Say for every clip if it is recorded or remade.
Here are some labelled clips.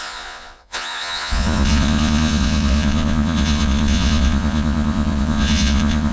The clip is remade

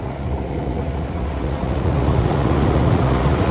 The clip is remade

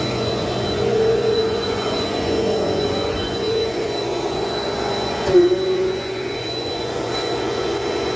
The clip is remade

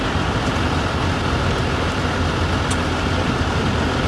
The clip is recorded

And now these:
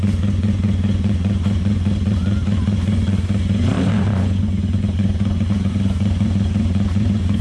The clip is remade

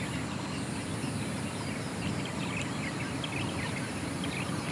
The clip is recorded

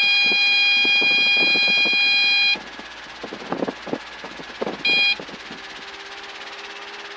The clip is recorded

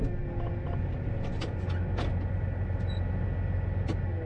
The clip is recorded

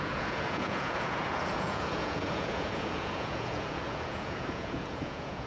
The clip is remade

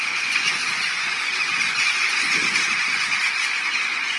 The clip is remade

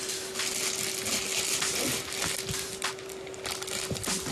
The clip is recorded